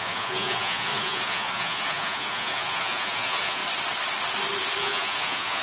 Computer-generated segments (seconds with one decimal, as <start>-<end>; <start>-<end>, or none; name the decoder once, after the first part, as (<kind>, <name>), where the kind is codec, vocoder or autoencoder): 0.0-3.6 (vocoder, Vocos); 4.8-5.6

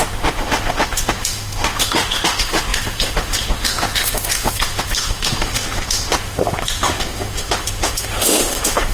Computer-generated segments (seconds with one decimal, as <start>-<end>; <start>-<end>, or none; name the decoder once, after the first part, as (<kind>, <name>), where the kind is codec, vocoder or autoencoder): 0.0-8.9 (autoencoder, DAC-VAE)

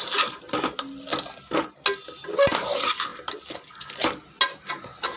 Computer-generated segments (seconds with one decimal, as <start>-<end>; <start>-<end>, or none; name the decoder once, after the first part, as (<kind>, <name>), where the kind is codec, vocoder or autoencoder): none

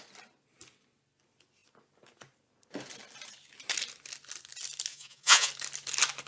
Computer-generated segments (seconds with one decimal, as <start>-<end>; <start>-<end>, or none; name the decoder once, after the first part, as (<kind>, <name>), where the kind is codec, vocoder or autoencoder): 4.9-5.5 (vocoder, Vocos)

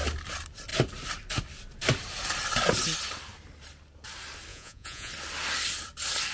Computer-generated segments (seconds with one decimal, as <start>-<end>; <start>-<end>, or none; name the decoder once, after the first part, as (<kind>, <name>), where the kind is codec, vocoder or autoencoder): 4.5-5.1 (vocoder, Vocos)

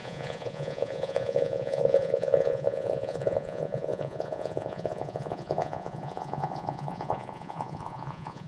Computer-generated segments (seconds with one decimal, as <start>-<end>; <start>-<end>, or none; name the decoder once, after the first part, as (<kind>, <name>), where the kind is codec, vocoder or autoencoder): 0.0-8.5 (vocoder, Vocos)

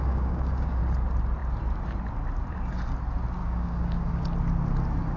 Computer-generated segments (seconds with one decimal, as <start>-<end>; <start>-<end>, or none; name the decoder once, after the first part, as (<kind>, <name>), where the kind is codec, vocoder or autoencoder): 0.0-0.8 (codec, DAC); 3.4-4.1